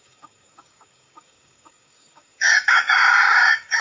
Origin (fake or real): fake